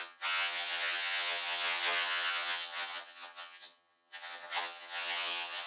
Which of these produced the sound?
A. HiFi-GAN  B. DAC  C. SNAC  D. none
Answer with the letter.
A